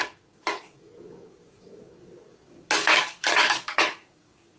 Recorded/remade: remade